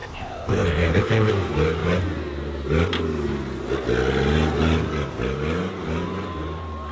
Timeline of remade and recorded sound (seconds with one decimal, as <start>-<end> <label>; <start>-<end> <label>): 0.0-1.3 remade; 1.3-6.9 recorded